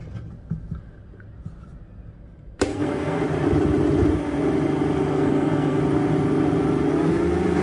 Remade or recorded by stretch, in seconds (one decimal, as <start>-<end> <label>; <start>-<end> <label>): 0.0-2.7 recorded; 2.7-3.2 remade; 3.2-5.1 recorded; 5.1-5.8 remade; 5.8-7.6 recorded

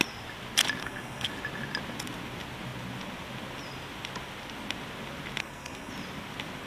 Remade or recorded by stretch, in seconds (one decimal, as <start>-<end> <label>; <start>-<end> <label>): 0.0-0.8 recorded; 0.8-1.3 remade; 1.3-5.4 recorded; 5.4-5.9 remade; 5.9-6.7 recorded

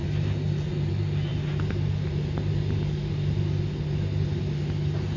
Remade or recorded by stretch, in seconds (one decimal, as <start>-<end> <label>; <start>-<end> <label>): 0.0-5.2 recorded

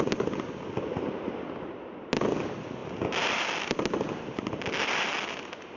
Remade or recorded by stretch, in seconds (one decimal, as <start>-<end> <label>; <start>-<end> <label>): 0.0-5.8 recorded